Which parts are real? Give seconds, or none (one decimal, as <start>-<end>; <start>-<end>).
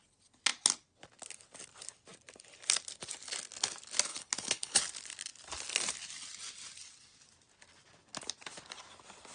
0.0-4.1; 4.8-9.3